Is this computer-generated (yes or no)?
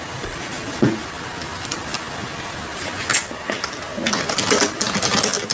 no